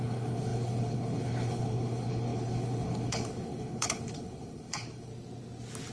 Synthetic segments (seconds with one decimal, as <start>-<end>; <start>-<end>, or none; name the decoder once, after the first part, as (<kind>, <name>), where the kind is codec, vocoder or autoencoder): 0.0-5.1 (codec, HILCodec)